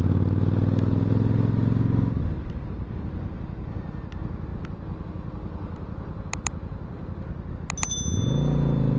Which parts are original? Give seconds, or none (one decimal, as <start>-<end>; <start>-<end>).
0.0-4.5; 7.5-9.0